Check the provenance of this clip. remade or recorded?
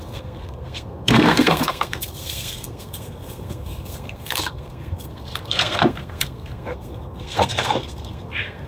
remade